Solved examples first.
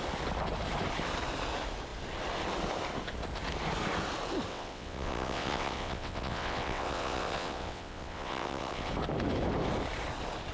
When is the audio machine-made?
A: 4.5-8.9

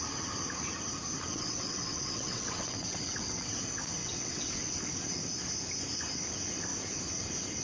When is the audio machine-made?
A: 1.3-3.5; 4.0-4.9

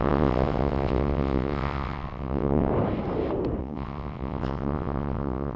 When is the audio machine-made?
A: 0.0-2.7; 3.6-5.6

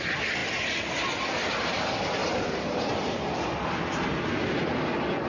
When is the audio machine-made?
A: none

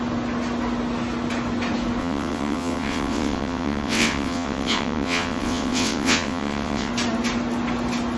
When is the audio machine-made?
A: 2.0-6.9

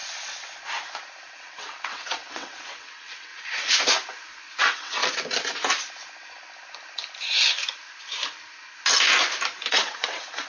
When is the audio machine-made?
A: 1.3-3.3; 4.6-5.0; 9.7-10.5

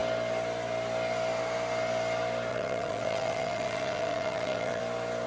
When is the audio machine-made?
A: 2.5-4.8